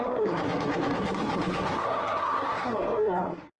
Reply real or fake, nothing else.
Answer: fake